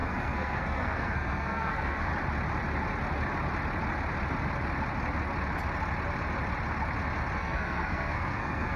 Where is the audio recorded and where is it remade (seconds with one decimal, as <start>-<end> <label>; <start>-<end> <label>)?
0.0-2.1 remade; 2.1-7.4 recorded; 7.4-8.8 remade